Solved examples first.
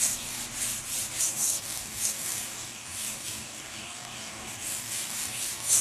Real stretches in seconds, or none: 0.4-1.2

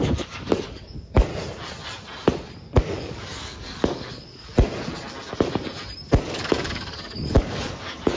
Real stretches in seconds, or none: 1.3-2.8; 4.5-6.2